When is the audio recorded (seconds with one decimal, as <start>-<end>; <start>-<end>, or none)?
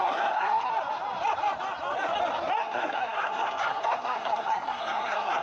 0.7-2.6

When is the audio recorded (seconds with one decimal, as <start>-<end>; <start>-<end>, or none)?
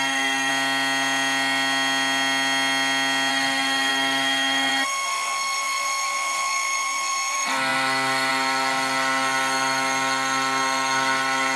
0.5-3.3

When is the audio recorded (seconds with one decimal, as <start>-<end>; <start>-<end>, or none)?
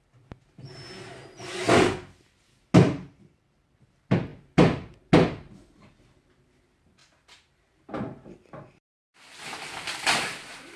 0.0-10.8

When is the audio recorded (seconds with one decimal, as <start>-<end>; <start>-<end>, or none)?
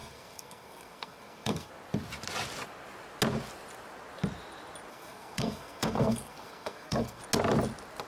1.7-4.9; 7.2-8.1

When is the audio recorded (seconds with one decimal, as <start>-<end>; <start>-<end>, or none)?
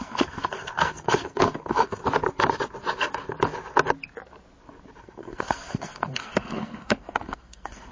2.0-5.0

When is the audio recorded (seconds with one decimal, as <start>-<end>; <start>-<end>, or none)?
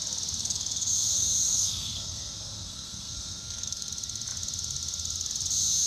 0.0-0.4; 3.9-5.9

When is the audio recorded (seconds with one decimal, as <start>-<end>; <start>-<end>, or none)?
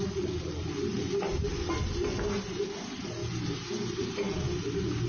0.0-5.1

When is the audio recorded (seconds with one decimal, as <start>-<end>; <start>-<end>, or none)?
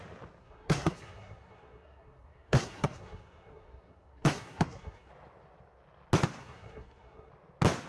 0.0-0.4; 5.1-6.4; 7.3-7.9